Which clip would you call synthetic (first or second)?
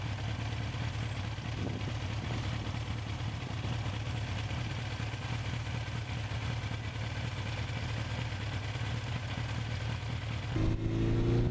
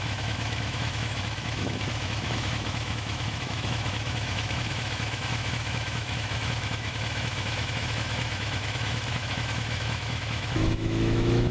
second